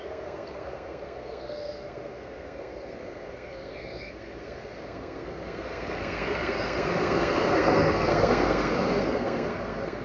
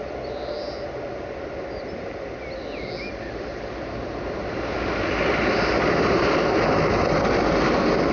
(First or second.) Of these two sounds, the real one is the second